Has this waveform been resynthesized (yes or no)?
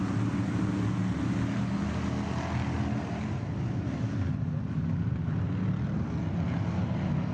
no